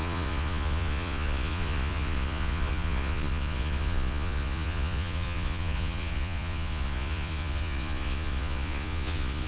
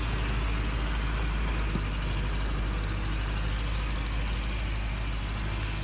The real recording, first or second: second